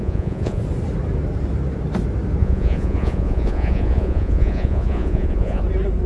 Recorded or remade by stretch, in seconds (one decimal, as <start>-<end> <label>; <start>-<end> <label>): 0.0-0.6 remade; 0.6-2.4 recorded; 2.4-5.6 remade; 5.6-6.1 recorded